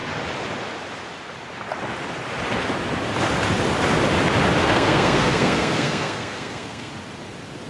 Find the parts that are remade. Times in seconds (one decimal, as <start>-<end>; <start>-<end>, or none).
4.6-6.9